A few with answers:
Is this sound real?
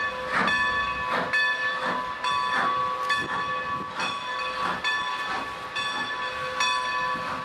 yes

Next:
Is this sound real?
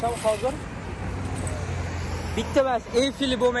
yes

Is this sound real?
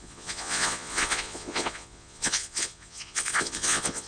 no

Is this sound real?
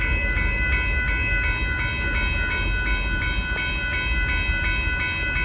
yes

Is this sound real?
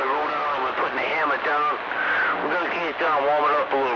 yes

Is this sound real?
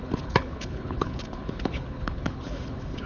no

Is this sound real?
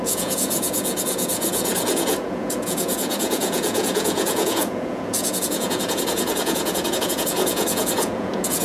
no